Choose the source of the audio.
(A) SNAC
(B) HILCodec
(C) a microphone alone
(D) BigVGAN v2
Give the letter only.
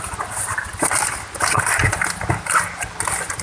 C